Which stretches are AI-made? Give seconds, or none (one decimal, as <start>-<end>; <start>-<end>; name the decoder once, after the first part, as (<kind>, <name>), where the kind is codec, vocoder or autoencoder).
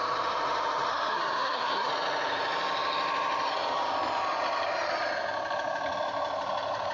0.9-1.9 (codec, SNAC)